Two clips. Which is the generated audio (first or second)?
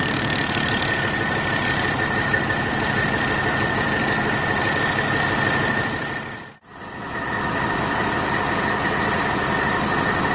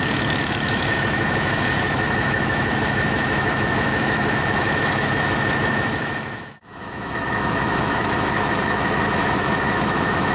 second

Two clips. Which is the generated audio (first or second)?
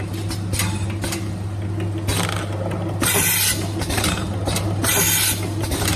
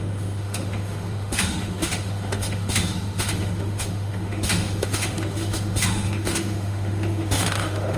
second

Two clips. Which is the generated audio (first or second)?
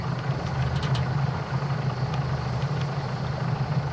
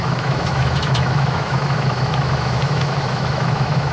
second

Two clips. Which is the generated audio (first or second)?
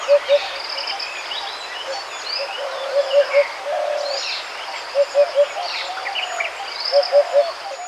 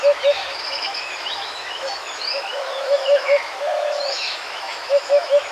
second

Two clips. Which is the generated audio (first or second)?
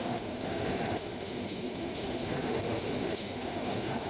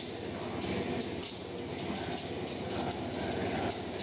first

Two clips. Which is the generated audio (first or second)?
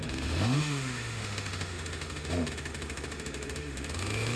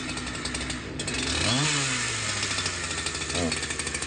first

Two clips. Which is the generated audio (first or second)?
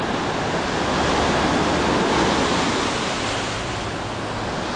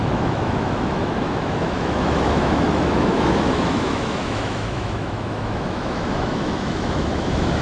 second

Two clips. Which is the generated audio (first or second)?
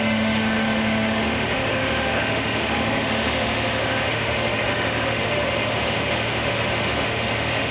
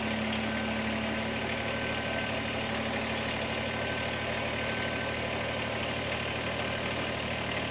first